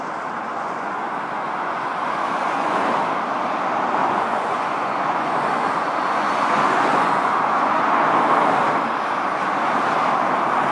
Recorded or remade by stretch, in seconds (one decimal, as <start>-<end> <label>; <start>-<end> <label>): 0.0-0.5 recorded; 0.5-2.9 remade; 2.9-4.0 recorded; 4.0-8.1 remade; 8.1-10.7 recorded